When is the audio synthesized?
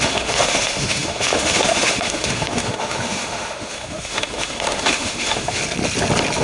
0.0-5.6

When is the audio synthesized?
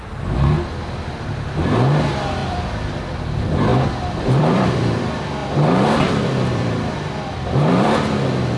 2.4-3.0; 3.7-5.0; 5.4-8.1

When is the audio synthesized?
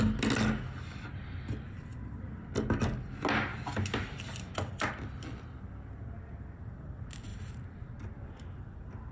7.3-8.0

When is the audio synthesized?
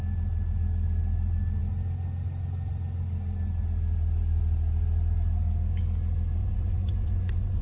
6.4-7.6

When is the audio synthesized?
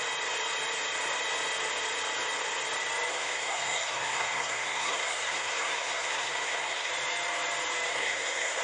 3.1-6.9; 7.9-8.6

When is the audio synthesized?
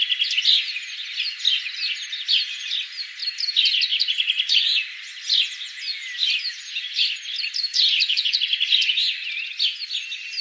3.9-4.8; 7.7-9.5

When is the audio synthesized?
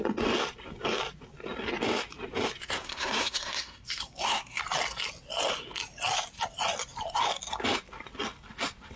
2.6-4.6